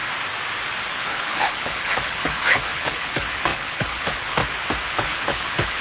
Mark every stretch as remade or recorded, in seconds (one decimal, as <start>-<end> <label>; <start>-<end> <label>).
0.0-0.8 recorded; 0.8-4.4 remade; 4.4-4.9 recorded; 4.9-5.8 remade